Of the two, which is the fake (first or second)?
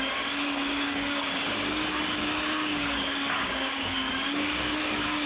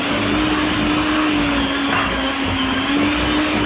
first